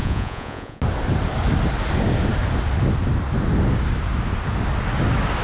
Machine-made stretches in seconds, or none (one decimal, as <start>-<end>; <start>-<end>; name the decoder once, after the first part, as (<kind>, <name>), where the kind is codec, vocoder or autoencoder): 0.0-0.8 (vocoder, Vocos)